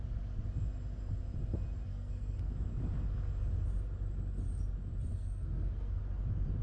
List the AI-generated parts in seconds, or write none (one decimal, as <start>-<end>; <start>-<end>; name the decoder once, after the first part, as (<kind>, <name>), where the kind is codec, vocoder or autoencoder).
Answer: 1.9-2.5 (codec, SNAC); 5.1-6.0

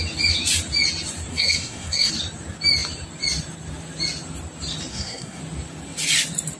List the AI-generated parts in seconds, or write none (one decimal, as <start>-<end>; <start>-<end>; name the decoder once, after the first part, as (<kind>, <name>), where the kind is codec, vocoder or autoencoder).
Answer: 1.3-2.1 (codec, SNAC); 4.9-5.4

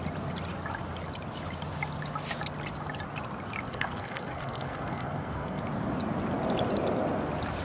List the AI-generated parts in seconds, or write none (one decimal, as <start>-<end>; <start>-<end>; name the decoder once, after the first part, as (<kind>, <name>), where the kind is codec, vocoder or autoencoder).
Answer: 3.7-5.6 (codec, SNAC)

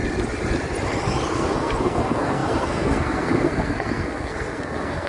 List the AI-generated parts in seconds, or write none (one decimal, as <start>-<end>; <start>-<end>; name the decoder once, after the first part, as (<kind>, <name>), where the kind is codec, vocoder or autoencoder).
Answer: 1.3-5.1 (codec, SNAC)

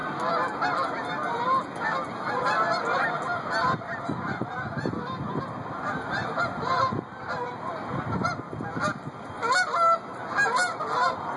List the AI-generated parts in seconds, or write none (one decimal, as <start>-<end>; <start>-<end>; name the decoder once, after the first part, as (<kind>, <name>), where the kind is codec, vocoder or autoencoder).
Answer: none

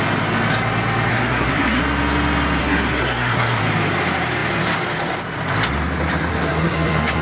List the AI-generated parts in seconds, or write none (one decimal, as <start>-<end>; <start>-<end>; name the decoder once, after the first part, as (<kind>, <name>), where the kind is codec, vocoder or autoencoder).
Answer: 1.1-1.8 (codec, SNAC); 2.6-3.6; 6.3-7.2

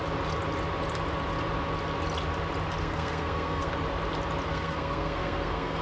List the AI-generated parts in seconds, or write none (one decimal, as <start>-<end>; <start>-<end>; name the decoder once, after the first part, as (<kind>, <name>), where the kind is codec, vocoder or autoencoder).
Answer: 2.8-3.7 (codec, SNAC); 4.5-5.8